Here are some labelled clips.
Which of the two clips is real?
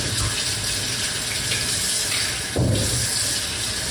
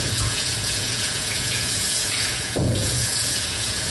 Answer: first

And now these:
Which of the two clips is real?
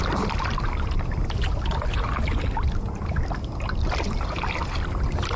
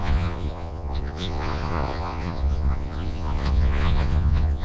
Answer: first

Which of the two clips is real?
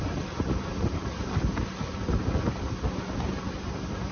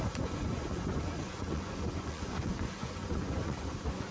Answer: first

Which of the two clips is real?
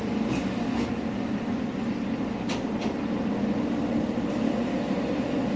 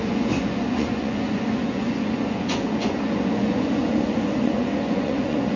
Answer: first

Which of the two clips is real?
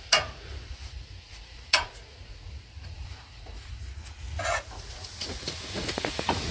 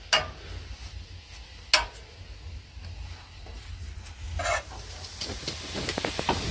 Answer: second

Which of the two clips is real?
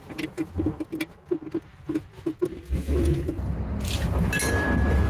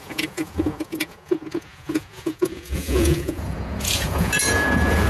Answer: first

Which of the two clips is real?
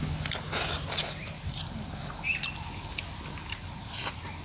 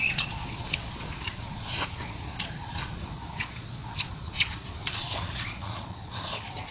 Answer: first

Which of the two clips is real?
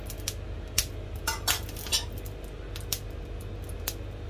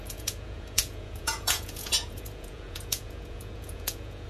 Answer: first